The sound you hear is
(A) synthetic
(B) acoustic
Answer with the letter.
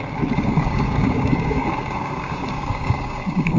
A